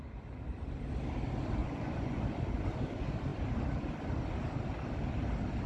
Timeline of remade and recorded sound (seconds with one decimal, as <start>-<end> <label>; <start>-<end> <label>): 0.0-1.6 recorded; 1.6-2.2 remade; 2.2-5.7 recorded